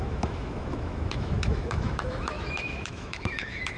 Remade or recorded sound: remade